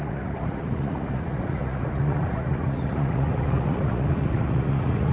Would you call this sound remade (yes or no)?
yes